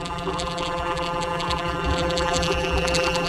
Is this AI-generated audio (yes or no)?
yes